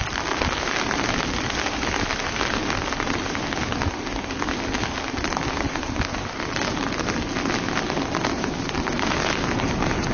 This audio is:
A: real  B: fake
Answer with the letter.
A